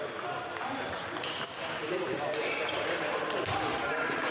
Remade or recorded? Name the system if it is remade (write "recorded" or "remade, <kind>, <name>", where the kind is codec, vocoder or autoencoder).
recorded